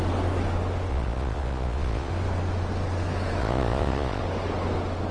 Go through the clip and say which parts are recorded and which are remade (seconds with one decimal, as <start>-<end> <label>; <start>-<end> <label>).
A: 0.0-0.9 recorded; 0.9-2.1 remade; 2.1-3.4 recorded; 3.4-4.2 remade; 4.2-5.1 recorded